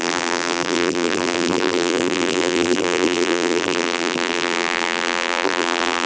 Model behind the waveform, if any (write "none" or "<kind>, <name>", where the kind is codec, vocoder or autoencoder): vocoder, BigVGAN v2